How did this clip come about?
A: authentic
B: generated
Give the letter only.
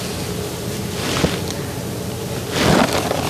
A